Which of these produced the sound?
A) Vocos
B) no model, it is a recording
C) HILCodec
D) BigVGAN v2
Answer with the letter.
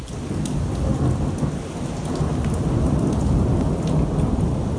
B